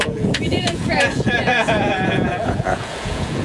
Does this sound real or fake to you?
fake